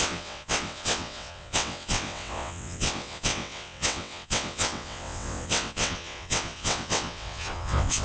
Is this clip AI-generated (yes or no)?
yes